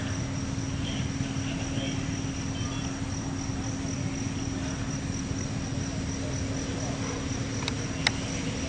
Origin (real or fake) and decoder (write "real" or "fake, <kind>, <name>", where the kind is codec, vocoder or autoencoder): real